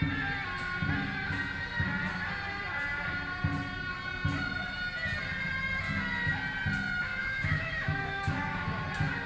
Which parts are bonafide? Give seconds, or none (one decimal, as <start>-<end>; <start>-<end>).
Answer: 0.0-7.2; 8.8-9.3